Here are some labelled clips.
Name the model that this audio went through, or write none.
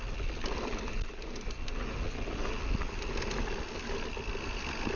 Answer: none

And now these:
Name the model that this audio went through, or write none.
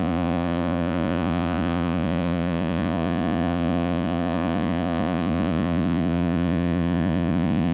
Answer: vocoder, Vocos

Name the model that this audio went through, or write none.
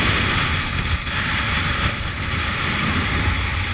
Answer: none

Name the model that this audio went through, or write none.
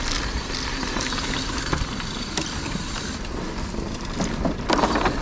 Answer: none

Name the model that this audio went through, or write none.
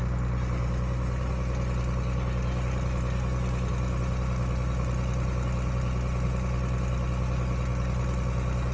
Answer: none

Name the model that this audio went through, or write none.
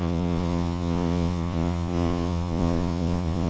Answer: vocoder, Vocos